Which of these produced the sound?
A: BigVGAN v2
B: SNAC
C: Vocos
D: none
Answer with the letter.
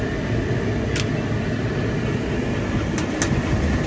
D